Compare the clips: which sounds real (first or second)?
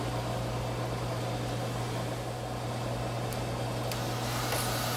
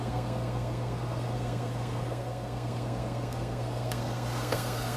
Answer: first